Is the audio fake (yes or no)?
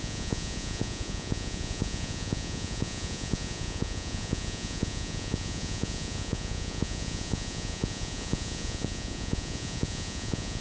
yes